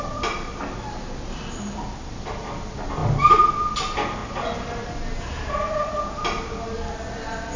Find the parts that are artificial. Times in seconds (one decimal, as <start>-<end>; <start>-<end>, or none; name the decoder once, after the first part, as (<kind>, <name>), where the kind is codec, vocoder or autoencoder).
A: none